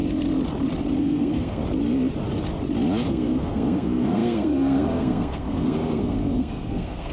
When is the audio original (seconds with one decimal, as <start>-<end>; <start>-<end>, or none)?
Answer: 0.0-1.0; 1.6-3.1